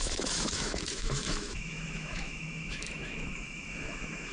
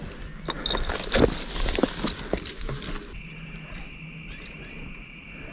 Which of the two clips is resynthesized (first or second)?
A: first